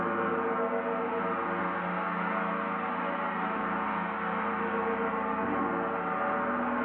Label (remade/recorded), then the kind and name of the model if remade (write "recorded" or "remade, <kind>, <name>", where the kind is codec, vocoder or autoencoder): recorded